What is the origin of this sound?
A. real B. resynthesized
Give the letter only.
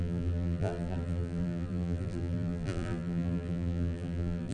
B